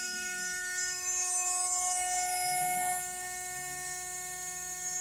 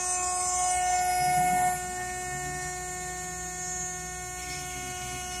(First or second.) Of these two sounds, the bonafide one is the second